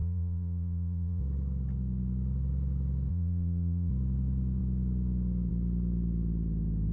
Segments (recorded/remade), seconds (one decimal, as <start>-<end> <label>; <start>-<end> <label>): 0.0-1.2 remade; 1.2-3.1 recorded; 3.1-3.9 remade; 3.9-6.9 recorded